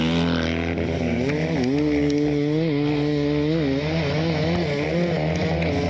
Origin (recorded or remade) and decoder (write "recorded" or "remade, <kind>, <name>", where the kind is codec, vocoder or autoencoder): recorded